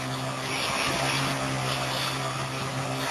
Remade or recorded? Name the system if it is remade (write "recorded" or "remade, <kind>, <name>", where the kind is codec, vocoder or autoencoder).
recorded